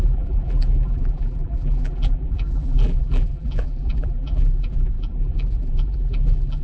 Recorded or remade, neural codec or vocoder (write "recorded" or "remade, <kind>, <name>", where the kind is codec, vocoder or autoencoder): remade, vocoder, BigVGAN v2